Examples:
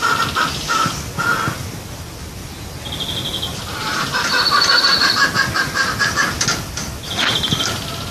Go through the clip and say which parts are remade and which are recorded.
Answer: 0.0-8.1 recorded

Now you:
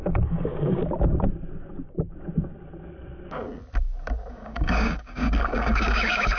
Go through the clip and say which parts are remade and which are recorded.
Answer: 0.0-0.8 remade; 0.8-4.3 recorded; 4.3-6.4 remade

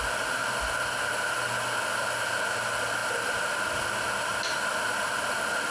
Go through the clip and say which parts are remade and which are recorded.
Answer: 0.0-5.7 recorded

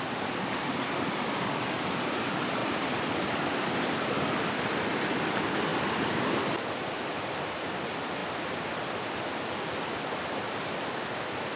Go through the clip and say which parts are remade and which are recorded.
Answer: 0.0-2.6 recorded; 2.6-3.8 remade; 3.8-5.7 recorded; 5.7-6.6 remade; 6.6-11.6 recorded

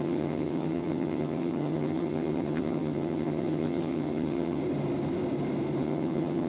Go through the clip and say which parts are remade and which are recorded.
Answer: 0.0-4.6 remade; 4.6-5.8 recorded; 5.8-6.5 remade